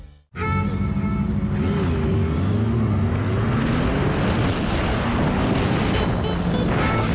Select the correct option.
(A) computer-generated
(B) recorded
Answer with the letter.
B